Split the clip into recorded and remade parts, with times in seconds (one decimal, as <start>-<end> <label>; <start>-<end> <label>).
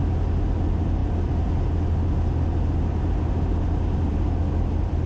0.0-5.1 recorded